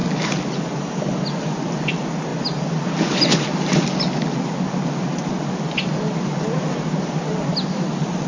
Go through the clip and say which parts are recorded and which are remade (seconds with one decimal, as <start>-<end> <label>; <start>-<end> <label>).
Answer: 0.0-8.3 recorded